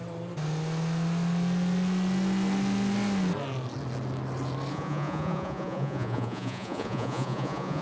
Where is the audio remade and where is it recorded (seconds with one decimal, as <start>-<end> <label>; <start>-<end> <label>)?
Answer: 0.0-4.7 recorded; 4.7-7.8 remade